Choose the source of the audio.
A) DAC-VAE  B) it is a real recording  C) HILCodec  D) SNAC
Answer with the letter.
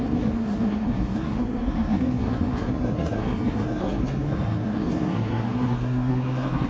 D